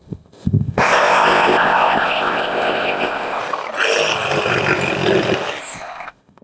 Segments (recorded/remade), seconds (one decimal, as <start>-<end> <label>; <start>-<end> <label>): 0.0-3.4 remade; 3.4-5.6 recorded; 5.6-6.4 remade